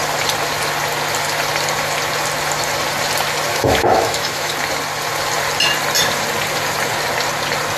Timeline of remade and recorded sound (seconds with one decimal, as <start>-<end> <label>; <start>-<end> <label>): 0.0-3.5 recorded; 3.5-4.5 remade; 4.5-7.8 recorded